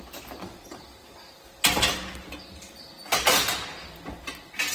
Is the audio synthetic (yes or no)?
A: no